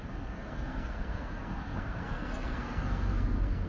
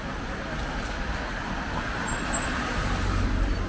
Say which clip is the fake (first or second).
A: first